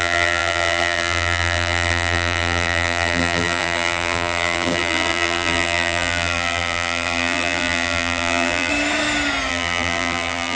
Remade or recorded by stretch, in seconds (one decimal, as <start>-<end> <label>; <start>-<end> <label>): 0.0-8.7 remade; 8.7-9.5 recorded; 9.5-10.6 remade